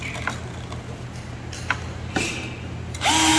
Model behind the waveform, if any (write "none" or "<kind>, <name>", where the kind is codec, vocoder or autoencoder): none